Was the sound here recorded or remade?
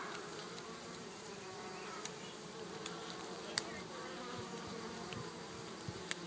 remade